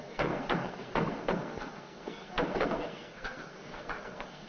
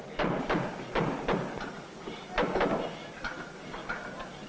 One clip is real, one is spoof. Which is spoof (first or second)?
first